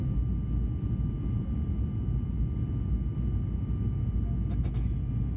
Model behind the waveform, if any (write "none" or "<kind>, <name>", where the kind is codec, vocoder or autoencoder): none